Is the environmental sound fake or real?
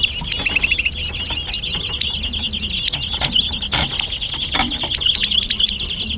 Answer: real